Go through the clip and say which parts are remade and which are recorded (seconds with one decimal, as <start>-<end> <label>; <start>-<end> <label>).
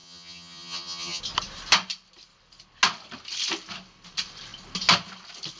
0.0-1.2 remade; 1.2-5.6 recorded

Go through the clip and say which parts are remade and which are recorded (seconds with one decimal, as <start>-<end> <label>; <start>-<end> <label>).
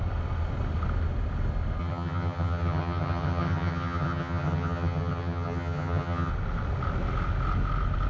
0.0-1.8 recorded; 1.8-6.3 remade; 6.3-8.1 recorded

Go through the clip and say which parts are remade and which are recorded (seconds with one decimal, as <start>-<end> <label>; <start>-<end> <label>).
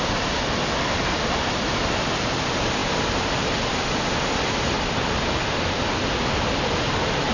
0.0-7.3 recorded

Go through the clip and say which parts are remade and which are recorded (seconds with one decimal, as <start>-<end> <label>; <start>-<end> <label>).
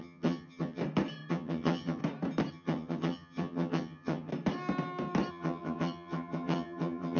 0.0-0.8 remade; 0.8-1.3 recorded; 1.3-2.0 remade; 2.0-2.5 recorded; 2.5-4.3 remade; 4.3-5.3 recorded; 5.3-7.2 remade